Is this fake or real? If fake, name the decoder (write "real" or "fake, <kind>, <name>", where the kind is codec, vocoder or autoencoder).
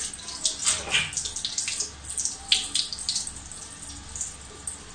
real